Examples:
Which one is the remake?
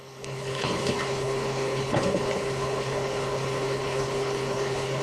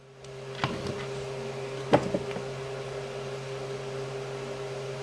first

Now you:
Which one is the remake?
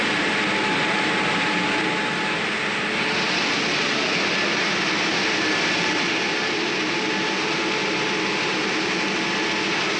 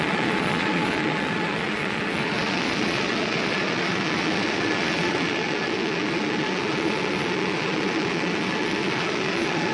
second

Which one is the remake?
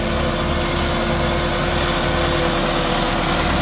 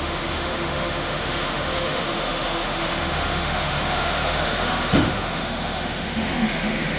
second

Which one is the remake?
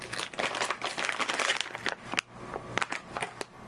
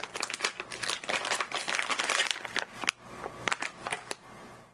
second